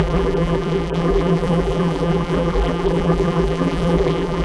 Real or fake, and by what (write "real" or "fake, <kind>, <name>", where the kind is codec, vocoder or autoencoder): fake, vocoder, BigVGAN v2